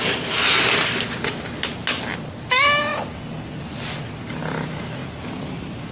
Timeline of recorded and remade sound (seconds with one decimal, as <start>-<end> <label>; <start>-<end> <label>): 0.0-5.0 recorded; 5.0-5.9 remade